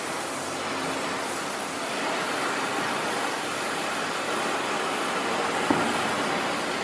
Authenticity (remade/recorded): recorded